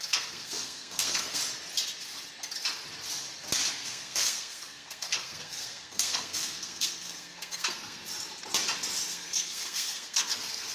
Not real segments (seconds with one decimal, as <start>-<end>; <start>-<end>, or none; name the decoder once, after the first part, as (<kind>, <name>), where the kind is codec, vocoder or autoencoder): 0.0-1.4 (codec, SNAC); 3.7-8.0; 9.1-10.7